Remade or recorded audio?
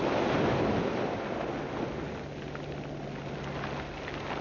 recorded